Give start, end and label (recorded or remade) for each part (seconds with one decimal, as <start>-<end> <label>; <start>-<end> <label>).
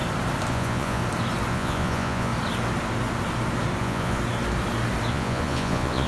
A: 0.0-0.5 recorded; 0.5-1.0 remade; 1.0-1.5 recorded; 1.5-2.3 remade; 2.3-3.8 recorded; 3.8-4.2 remade; 4.2-5.1 recorded; 5.1-6.1 remade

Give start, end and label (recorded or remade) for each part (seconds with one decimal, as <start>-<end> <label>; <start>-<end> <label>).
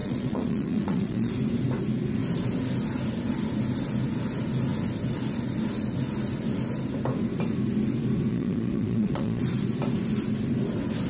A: 0.0-1.3 remade; 1.3-8.3 recorded; 8.3-9.4 remade; 9.4-11.1 recorded